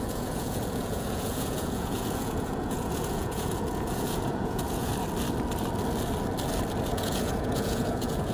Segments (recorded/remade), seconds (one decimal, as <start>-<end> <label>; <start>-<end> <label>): 0.0-4.9 remade; 4.9-6.9 recorded; 6.9-8.3 remade